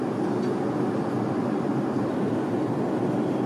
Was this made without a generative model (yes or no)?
yes